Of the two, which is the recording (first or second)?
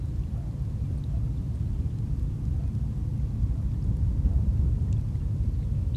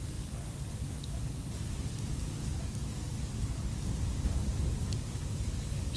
first